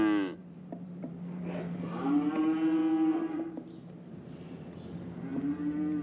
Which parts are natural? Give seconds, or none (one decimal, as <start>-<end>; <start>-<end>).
0.0-0.4; 2.4-5.3